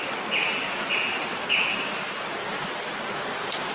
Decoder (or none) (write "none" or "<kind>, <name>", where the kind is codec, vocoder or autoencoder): none